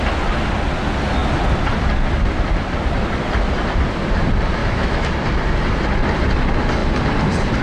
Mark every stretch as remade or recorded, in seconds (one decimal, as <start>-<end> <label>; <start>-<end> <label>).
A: 0.0-4.6 recorded; 4.6-5.1 remade; 5.1-7.6 recorded